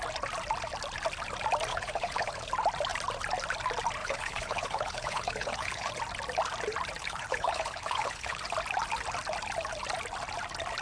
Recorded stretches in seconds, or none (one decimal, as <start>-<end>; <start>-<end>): 0.0-1.7; 2.5-4.0; 5.9-7.0; 8.4-10.8